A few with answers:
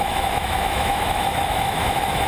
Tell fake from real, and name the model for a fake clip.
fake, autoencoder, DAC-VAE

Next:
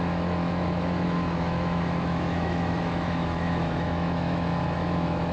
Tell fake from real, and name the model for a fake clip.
fake, autoencoder, DAC-VAE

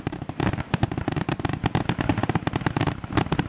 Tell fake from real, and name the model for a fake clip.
real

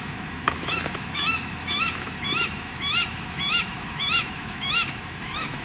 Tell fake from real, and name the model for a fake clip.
fake, autoencoder, DAC-VAE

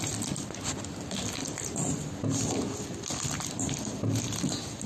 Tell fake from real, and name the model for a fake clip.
real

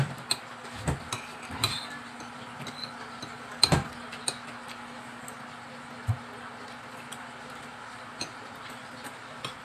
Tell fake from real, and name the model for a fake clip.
real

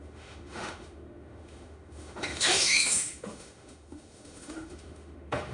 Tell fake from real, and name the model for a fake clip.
fake, autoencoder, DAC-VAE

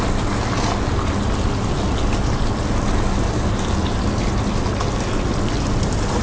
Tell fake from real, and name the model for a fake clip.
real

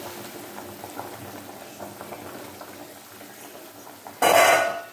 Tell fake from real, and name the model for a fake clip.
real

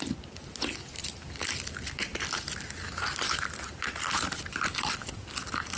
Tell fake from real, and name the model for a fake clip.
real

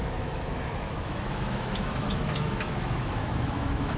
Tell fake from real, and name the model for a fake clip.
fake, autoencoder, DAC-VAE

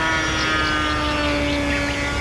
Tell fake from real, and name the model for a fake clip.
real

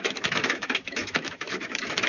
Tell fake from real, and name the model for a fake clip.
fake, autoencoder, DAC-VAE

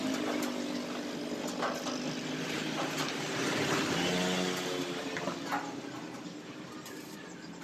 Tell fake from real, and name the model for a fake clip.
real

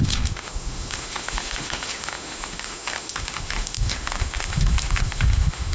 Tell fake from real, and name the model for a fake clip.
fake, autoencoder, DAC-VAE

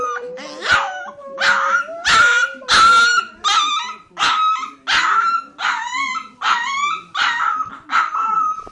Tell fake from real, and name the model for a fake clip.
real